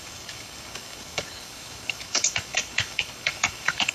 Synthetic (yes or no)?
yes